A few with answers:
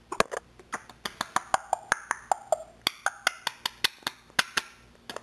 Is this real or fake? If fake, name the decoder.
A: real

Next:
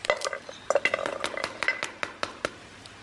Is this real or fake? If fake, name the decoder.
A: real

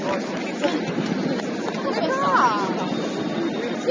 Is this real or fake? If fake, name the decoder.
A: real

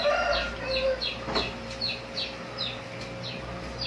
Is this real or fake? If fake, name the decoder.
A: real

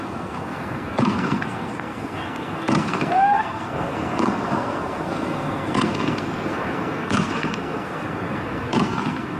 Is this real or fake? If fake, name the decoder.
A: fake, codec, SNAC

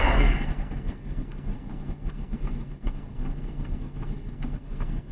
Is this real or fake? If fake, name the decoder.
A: fake, codec, SNAC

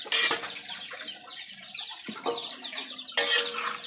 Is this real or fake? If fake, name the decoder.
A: real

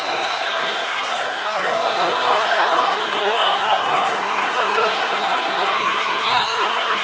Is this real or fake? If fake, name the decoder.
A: fake, codec, SNAC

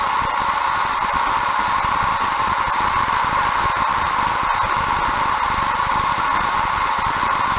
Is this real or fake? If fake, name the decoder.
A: real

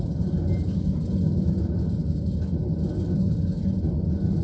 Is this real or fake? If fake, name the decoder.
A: real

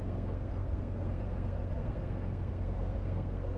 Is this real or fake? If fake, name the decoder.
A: fake, codec, SNAC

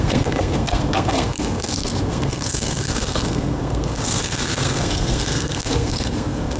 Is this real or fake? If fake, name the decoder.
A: fake, codec, SNAC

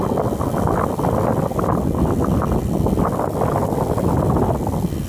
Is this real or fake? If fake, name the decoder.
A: real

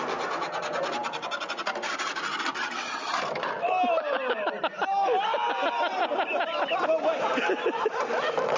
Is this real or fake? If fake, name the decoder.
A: real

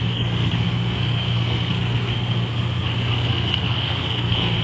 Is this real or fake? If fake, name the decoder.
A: fake, codec, SNAC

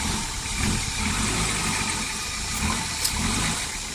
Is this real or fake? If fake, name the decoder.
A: real